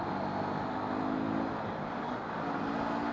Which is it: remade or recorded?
recorded